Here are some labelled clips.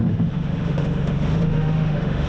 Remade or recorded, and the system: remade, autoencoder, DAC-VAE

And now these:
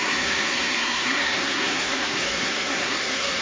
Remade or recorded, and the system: remade, codec, SNAC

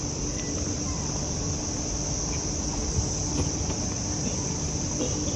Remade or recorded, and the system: remade, vocoder, BigVGAN v2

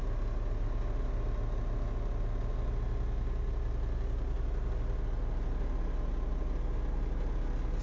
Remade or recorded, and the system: recorded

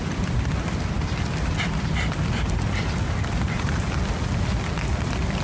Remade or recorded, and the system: recorded